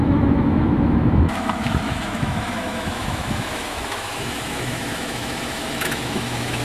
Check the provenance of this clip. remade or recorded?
remade